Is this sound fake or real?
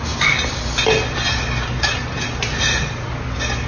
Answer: real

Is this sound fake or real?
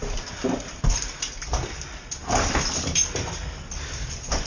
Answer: real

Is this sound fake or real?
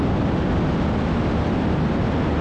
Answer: real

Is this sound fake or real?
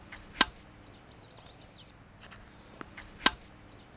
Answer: real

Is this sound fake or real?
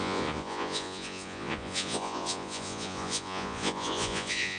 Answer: fake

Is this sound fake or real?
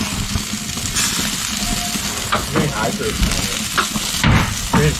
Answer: real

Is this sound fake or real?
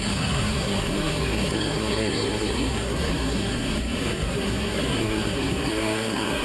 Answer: fake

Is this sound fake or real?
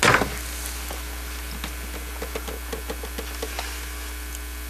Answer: real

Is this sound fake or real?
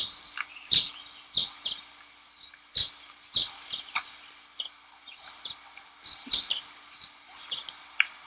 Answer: real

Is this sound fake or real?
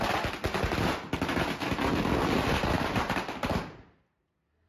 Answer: real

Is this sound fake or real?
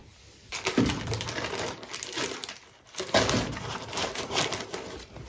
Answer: real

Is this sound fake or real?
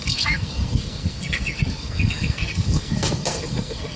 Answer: fake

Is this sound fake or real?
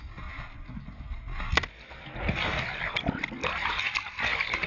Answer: real